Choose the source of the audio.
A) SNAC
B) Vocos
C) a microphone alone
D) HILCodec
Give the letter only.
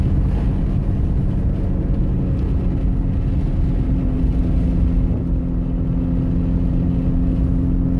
C